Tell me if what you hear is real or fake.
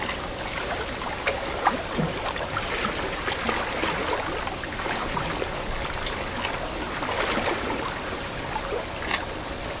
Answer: real